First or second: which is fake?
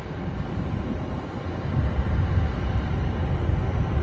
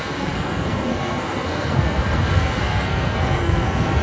second